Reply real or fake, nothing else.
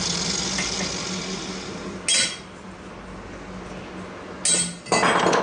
real